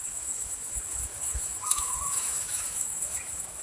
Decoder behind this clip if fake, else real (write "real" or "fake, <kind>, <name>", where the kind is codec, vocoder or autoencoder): fake, autoencoder, DAC-VAE